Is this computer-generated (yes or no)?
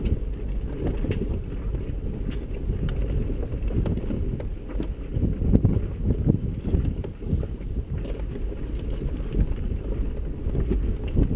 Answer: no